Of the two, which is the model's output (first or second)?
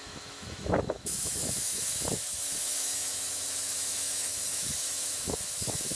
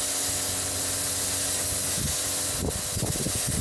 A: first